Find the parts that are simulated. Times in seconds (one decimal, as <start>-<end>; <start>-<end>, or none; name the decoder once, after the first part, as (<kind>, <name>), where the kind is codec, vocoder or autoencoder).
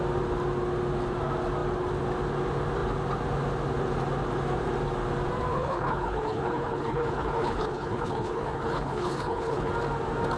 5.5-9.7 (codec, HILCodec)